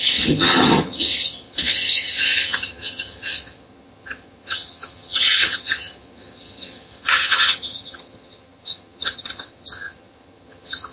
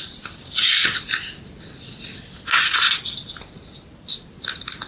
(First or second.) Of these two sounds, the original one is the second